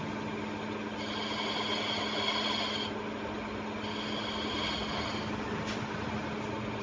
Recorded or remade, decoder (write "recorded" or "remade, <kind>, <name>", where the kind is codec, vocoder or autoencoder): recorded